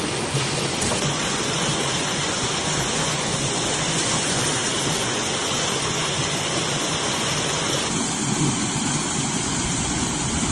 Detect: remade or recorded remade